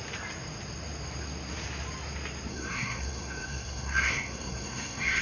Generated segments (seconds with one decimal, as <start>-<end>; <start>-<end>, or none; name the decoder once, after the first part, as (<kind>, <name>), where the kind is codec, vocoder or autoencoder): 2.5-5.2 (codec, SNAC)